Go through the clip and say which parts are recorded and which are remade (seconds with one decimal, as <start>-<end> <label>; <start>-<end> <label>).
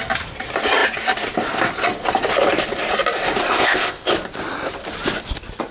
0.0-3.4 recorded; 3.4-4.1 remade; 4.1-5.7 recorded